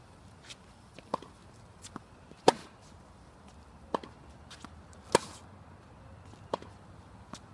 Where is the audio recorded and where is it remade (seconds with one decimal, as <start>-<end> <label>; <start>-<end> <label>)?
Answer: 0.0-7.5 recorded